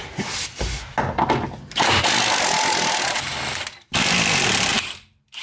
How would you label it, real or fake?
real